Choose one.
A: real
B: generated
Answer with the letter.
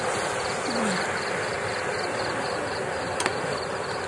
B